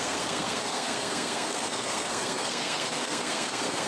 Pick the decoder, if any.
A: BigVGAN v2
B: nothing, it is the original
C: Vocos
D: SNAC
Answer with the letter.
D